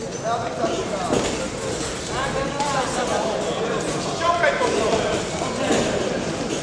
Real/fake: fake